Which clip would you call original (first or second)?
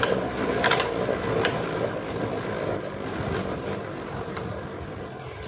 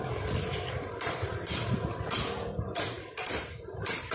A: first